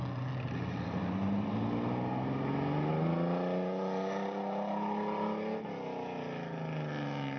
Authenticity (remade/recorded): recorded